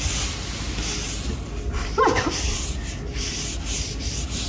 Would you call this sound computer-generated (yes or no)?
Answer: no